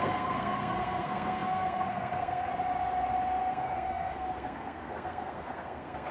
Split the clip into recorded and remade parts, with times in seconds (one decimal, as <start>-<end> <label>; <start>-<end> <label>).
0.0-2.5 remade; 2.5-3.5 recorded; 3.5-6.1 remade